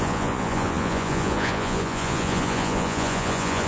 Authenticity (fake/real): fake